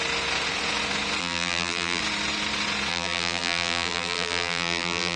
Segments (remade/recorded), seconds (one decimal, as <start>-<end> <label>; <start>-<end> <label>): 0.0-1.2 recorded; 1.2-2.0 remade; 2.0-2.9 recorded; 2.9-5.2 remade